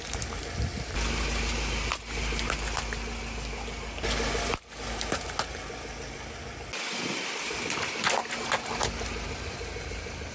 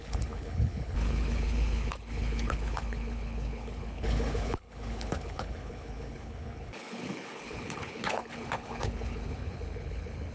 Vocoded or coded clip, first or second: second